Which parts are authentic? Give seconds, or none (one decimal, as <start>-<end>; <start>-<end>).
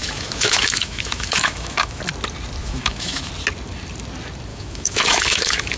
2.0-2.6; 3.3-4.5